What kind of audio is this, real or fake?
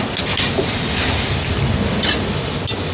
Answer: real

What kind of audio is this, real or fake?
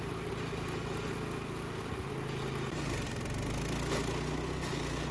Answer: real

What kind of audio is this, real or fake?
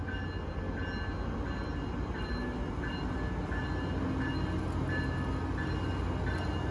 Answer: real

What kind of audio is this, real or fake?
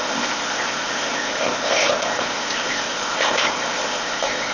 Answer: fake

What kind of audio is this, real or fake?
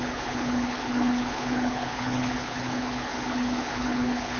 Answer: fake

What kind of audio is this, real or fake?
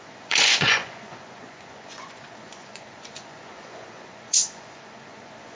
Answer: fake